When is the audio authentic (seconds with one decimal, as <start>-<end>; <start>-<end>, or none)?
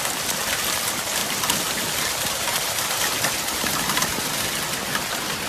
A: 0.0-1.2; 4.5-5.5